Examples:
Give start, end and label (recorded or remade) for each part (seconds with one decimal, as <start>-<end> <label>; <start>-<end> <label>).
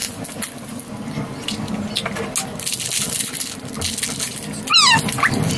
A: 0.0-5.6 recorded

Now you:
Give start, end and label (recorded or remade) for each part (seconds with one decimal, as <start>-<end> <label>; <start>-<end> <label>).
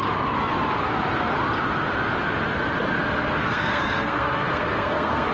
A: 0.0-3.4 recorded; 3.4-5.3 remade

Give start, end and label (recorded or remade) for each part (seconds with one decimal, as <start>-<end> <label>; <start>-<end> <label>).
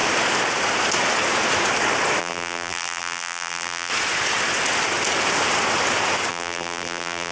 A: 0.0-2.2 recorded; 2.2-3.9 remade; 3.9-6.3 recorded; 6.3-7.3 remade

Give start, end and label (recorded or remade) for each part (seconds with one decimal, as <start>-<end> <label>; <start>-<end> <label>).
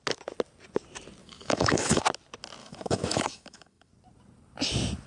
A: 0.0-1.2 recorded; 1.2-2.0 remade; 2.0-2.6 recorded; 2.6-3.9 remade; 3.9-5.1 recorded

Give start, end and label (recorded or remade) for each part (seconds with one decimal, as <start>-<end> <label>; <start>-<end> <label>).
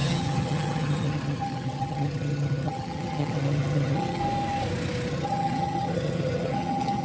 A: 0.0-4.2 remade; 4.2-5.1 recorded; 5.1-7.0 remade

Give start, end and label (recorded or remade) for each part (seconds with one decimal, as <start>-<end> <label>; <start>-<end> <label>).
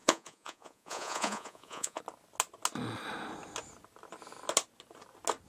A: 0.0-2.0 remade; 2.0-5.5 recorded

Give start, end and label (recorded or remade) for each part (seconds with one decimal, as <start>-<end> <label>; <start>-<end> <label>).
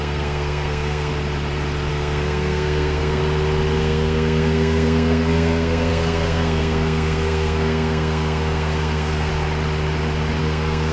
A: 0.0-1.1 remade; 1.1-1.9 recorded; 1.9-3.2 remade; 3.2-3.8 recorded; 3.8-9.3 remade; 9.3-10.4 recorded; 10.4-10.9 remade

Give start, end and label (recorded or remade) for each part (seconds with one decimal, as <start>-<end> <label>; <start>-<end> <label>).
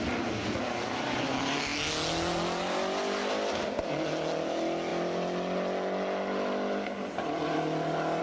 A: 0.0-8.2 recorded